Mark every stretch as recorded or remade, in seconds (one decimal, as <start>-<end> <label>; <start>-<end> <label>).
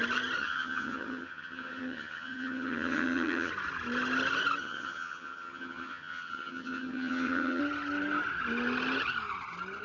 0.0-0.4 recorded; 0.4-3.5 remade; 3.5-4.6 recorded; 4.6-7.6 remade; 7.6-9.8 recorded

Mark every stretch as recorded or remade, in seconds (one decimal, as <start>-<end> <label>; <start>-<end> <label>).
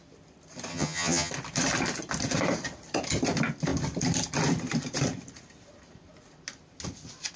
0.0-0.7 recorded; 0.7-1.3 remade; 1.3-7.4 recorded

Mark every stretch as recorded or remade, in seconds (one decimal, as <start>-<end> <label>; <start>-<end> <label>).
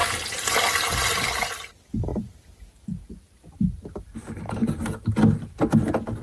0.0-6.2 recorded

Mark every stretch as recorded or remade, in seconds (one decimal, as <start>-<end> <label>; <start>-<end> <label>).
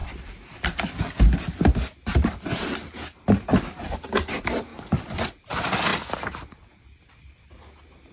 0.0-4.7 recorded; 4.7-5.3 remade; 5.3-8.1 recorded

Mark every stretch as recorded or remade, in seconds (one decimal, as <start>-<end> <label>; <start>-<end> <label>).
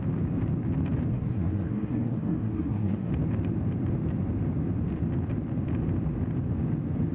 0.0-1.1 recorded; 1.1-3.1 remade; 3.1-7.1 recorded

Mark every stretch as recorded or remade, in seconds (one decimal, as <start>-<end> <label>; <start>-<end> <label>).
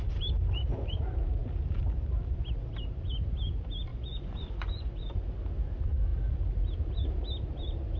0.0-3.9 recorded; 3.9-4.9 remade; 4.9-8.0 recorded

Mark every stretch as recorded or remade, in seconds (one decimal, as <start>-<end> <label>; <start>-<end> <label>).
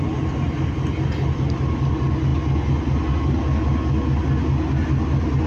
0.0-5.5 recorded